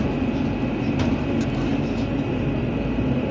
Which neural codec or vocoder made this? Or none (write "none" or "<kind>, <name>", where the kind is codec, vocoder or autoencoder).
none